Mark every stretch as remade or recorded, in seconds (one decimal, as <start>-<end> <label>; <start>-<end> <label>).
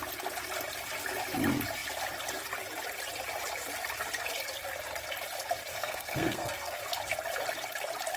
0.0-5.7 recorded; 5.7-6.8 remade; 6.8-8.2 recorded